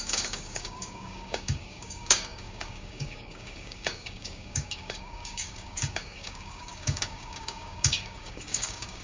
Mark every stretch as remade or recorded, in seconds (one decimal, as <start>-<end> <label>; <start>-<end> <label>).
0.0-9.0 remade